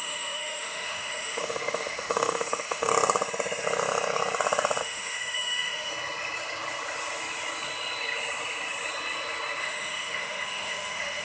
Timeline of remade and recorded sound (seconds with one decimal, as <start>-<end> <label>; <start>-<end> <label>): 0.0-2.9 remade; 2.9-4.8 recorded; 4.8-5.9 remade; 5.9-9.6 recorded; 9.6-11.2 remade